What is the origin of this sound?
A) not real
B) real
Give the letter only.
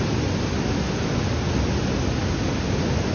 B